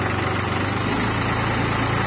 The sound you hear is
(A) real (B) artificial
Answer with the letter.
A